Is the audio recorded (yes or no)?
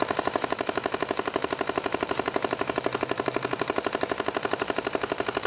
no